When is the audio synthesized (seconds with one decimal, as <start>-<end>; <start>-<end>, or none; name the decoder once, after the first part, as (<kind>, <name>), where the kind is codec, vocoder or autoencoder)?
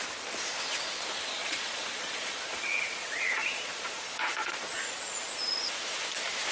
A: 1.4-5.3 (vocoder, Vocos)